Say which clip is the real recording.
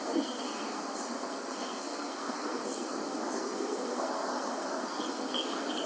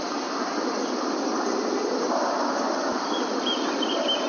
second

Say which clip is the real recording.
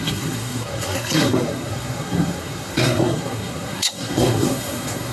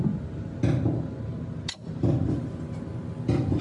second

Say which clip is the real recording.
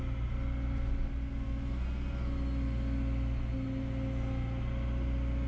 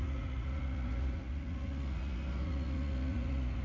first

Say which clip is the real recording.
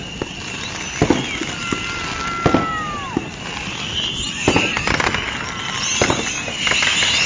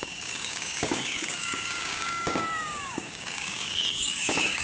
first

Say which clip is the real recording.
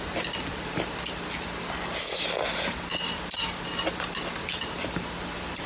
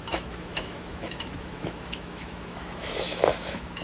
first